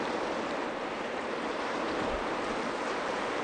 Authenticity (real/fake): fake